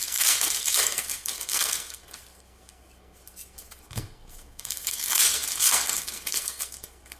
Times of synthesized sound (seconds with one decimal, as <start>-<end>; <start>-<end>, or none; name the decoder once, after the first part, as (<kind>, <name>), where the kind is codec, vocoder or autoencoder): 0.0-7.2 (codec, SNAC)